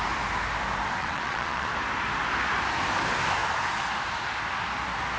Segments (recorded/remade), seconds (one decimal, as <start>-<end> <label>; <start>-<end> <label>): 0.0-1.0 recorded; 1.0-1.7 remade; 1.7-5.2 recorded